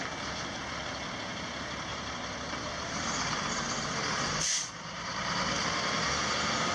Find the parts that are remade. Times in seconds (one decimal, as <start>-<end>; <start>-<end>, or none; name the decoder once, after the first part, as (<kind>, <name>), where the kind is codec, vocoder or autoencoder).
1.9-5.7 (vocoder, BigVGAN v2)